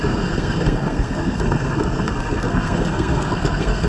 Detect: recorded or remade remade